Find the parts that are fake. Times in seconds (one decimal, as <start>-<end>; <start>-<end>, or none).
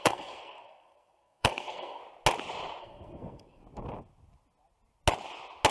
0.0-2.0; 2.8-3.6